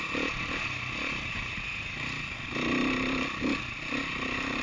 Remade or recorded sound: recorded